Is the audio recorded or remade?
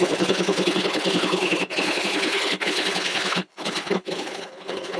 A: remade